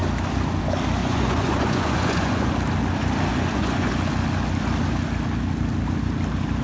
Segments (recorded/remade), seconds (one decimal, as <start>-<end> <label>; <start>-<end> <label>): 0.0-1.0 recorded; 1.0-2.5 remade; 2.5-3.3 recorded; 3.3-3.9 remade; 3.9-6.6 recorded